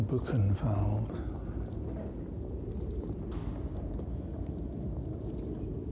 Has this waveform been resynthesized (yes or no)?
no